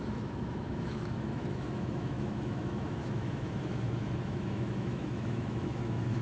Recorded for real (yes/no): no